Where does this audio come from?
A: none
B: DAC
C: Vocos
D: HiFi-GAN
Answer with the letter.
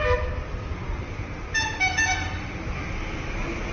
A